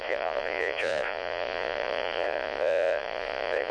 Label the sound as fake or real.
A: fake